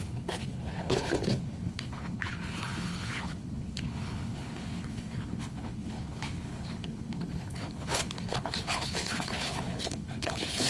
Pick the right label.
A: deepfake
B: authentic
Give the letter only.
A